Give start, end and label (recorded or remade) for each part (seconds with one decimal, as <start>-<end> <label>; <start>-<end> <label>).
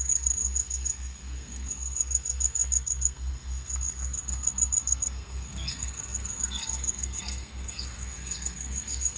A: 0.0-9.2 remade